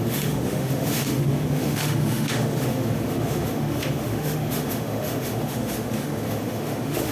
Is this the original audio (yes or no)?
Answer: no